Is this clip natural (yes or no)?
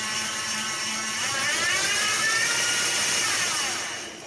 no